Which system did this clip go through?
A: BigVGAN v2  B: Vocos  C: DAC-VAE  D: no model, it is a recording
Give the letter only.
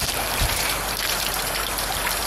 A